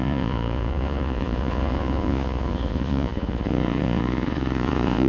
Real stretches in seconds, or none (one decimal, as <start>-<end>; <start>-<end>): none